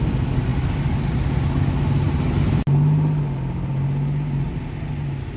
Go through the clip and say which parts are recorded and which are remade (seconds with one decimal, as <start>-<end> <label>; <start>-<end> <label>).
0.0-5.4 recorded